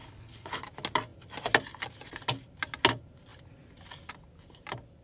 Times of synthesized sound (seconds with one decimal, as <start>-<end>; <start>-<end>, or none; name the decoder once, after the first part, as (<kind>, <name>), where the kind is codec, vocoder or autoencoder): 0.0-0.6 (codec, HILCodec)